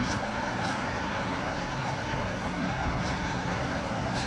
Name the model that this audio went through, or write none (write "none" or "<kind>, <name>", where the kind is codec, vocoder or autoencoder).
codec, SNAC